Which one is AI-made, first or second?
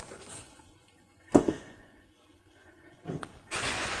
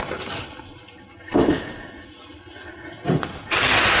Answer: first